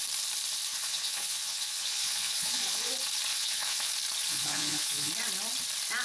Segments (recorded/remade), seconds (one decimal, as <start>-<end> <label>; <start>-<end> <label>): 0.0-0.7 recorded; 0.7-2.9 remade; 2.9-3.3 recorded; 3.3-3.9 remade; 3.9-4.3 recorded; 4.3-5.1 remade; 5.1-6.0 recorded